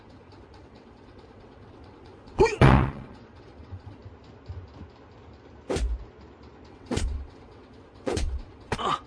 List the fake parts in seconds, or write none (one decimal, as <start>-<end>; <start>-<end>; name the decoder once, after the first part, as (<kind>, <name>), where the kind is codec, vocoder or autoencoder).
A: 0.0-4.0 (vocoder, WaveNeXt); 6.7-9.1